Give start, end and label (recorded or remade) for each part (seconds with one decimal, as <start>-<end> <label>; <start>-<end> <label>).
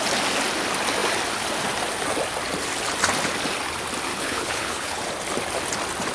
0.0-4.1 recorded; 4.1-5.0 remade; 5.0-6.1 recorded